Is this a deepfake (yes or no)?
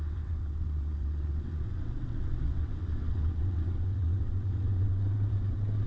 yes